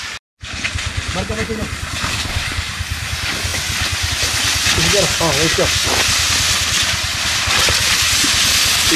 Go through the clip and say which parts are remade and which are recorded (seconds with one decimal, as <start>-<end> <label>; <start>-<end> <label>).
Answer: 0.0-9.0 recorded